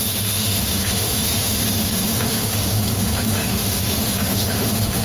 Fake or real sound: fake